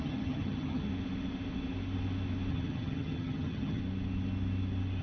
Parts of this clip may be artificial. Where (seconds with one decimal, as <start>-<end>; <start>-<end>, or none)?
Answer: 0.0-0.9; 2.5-3.8

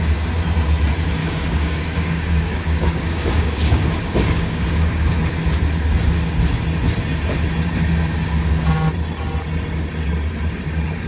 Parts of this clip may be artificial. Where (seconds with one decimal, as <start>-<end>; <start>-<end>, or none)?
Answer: 1.2-5.3

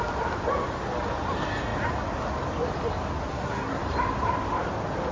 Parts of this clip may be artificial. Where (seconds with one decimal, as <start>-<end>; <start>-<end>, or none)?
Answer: 3.3-3.8

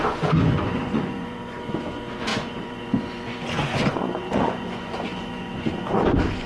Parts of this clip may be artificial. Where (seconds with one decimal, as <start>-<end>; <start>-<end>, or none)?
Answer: 0.0-6.5

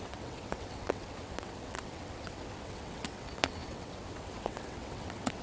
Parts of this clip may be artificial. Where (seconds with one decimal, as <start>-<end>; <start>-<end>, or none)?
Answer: 0.0-5.4

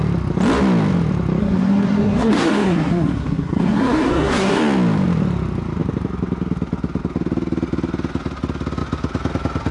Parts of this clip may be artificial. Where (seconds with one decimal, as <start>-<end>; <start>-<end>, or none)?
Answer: 1.4-4.6

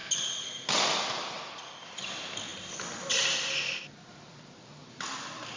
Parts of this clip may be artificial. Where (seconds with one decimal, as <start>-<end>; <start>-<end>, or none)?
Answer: 1.9-2.5; 5.0-5.6